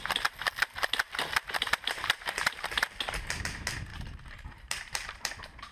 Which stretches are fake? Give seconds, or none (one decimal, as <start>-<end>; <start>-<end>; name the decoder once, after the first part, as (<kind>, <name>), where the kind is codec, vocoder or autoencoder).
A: 3.9-5.3 (vocoder, BigVGAN v2)